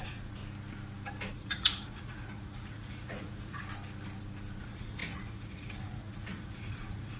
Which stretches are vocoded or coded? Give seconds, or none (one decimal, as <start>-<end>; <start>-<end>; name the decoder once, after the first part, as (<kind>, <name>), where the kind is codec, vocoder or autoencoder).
0.0-0.4 (vocoder, Vocos); 1.3-3.6; 4.6-7.2